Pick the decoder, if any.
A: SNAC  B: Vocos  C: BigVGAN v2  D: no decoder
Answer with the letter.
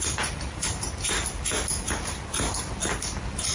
D